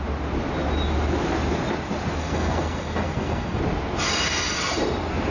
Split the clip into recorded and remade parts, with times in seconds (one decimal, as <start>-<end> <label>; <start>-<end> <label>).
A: 0.0-2.2 recorded; 2.2-3.6 remade; 3.6-5.3 recorded